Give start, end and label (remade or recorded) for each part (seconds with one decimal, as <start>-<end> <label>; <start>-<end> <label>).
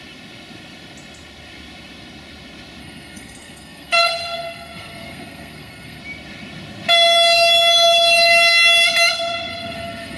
0.0-2.8 recorded; 2.8-6.0 remade; 6.0-9.5 recorded; 9.5-10.2 remade